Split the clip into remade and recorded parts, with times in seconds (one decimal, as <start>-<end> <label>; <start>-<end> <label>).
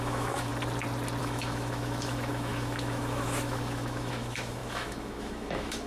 0.0-0.5 remade; 0.5-1.2 recorded; 1.2-5.9 remade